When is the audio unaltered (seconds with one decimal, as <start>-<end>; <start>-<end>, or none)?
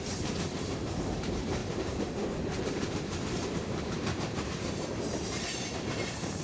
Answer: none